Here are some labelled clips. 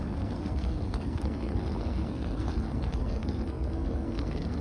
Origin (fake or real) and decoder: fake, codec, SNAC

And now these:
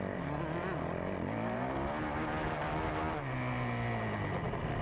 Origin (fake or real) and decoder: real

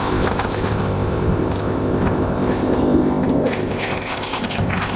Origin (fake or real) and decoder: fake, codec, ZipCodec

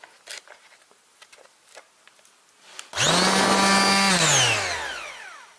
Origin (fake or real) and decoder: real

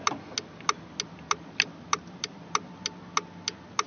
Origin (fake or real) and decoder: real